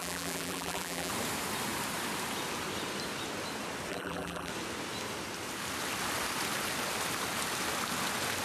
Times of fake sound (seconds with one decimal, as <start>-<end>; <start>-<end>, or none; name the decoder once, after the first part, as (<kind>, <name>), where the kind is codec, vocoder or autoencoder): 0.0-1.1 (vocoder, BigVGAN v2); 3.9-4.5